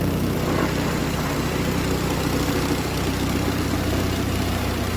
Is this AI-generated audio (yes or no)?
yes